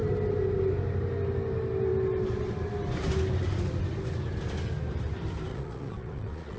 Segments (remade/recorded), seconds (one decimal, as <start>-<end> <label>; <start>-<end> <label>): 0.0-5.5 recorded; 5.5-6.6 remade